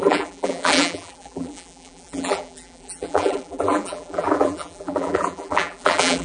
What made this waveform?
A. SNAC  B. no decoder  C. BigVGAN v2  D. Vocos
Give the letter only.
C